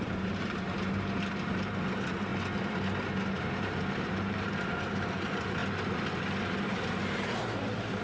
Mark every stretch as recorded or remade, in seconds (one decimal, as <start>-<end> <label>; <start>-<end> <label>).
0.0-2.3 remade; 2.3-3.3 recorded; 3.3-5.6 remade; 5.6-6.6 recorded; 6.6-8.0 remade